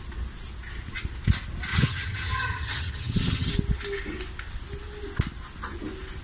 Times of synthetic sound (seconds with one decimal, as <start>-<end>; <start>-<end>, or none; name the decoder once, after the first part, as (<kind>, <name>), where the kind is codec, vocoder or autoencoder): 1.7-3.5 (vocoder, HiFi-GAN)